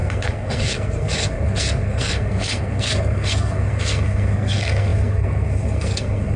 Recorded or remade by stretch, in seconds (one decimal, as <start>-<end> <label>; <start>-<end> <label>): 0.0-6.4 remade